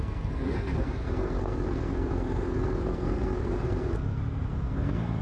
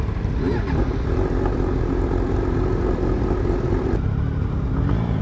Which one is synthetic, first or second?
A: first